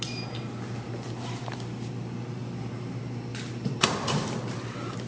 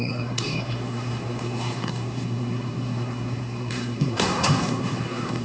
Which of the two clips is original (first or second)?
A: first